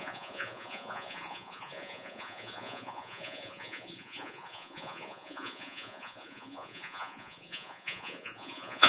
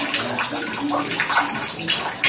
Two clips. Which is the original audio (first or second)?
second